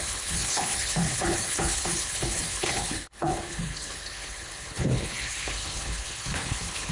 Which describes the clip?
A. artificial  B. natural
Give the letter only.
A